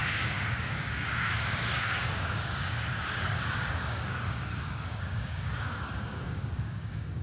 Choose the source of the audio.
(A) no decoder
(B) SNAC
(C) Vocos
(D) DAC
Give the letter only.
D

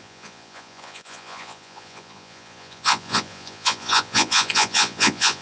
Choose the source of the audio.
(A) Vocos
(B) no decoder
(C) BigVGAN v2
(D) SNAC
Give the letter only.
A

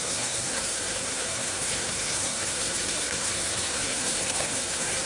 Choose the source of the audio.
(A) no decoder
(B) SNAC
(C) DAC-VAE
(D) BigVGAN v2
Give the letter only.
B